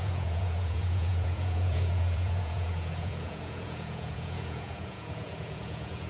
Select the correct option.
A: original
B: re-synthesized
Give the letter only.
B